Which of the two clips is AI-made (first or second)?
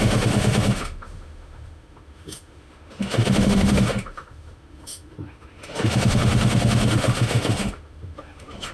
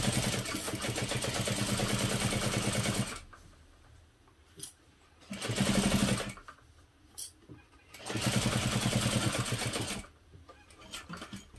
first